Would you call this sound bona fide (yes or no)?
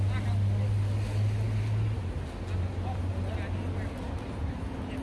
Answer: yes